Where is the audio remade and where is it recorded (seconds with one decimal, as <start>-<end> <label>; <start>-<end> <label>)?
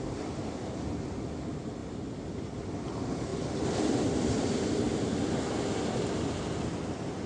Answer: 0.0-7.3 recorded